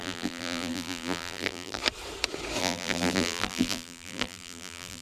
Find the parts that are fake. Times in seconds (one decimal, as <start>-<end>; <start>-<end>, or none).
0.0-1.8; 2.6-5.0